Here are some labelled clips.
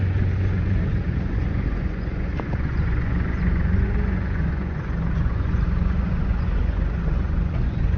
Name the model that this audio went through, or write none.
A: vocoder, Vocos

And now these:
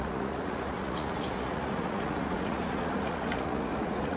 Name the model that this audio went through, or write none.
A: vocoder, Vocos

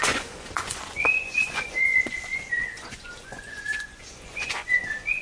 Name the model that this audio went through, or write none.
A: vocoder, Vocos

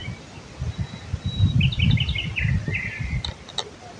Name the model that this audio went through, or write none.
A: none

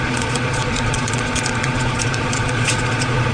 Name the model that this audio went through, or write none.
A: vocoder, Vocos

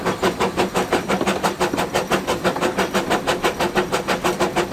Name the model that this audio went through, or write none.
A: none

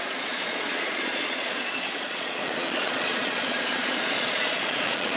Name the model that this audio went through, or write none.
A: vocoder, Vocos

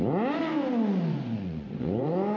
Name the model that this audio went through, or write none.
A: vocoder, Vocos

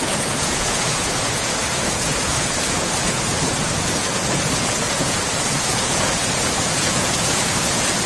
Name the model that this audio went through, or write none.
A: vocoder, Vocos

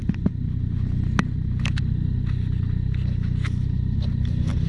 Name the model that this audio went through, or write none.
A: none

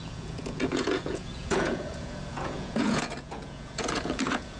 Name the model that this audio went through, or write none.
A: vocoder, Vocos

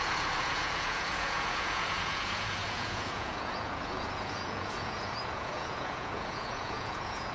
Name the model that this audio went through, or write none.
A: vocoder, Vocos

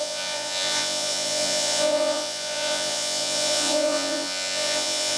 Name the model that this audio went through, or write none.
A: vocoder, Vocos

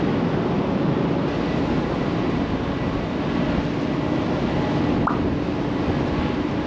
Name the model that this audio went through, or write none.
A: none